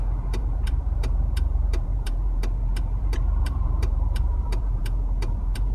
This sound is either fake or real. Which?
fake